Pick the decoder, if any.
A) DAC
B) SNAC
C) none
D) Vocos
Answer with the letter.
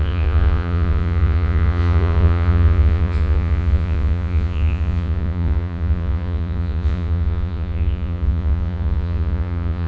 D